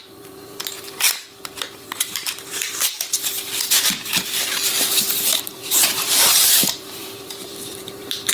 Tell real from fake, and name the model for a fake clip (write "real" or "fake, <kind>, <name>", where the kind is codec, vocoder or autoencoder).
fake, vocoder, BigVGAN v2